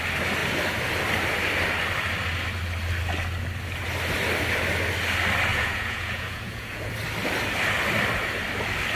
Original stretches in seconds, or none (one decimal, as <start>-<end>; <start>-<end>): 0.0-5.5; 6.9-9.0

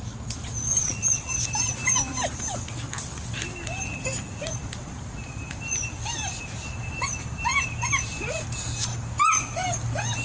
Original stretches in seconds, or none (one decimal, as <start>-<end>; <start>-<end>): 0.0-0.7; 1.3-10.2

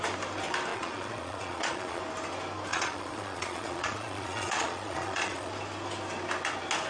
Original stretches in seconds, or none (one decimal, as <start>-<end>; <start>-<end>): 0.0-0.7; 2.0-2.7; 5.5-6.9